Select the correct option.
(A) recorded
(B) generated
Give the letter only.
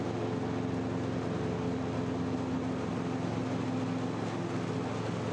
A